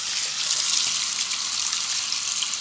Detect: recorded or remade recorded